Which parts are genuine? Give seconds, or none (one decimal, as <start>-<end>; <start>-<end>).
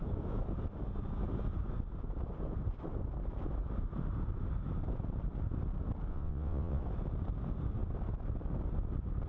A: 0.0-6.1; 6.8-9.3